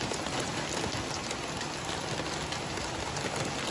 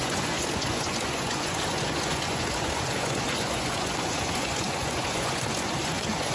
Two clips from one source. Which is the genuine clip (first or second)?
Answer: first